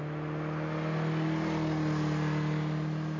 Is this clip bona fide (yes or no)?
yes